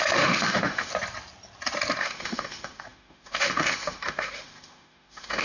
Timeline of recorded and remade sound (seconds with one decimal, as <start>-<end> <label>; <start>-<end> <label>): 0.0-0.9 remade; 0.9-2.0 recorded; 2.0-5.4 remade